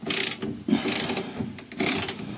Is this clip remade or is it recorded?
recorded